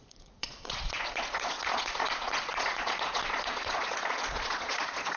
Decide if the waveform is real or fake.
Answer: fake